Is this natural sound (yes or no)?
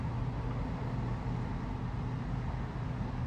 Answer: yes